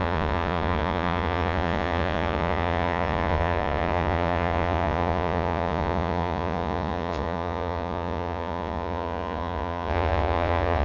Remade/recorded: remade